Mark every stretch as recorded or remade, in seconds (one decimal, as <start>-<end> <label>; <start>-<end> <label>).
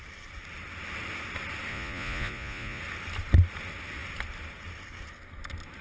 0.0-1.7 recorded; 1.7-2.8 remade; 2.8-5.8 recorded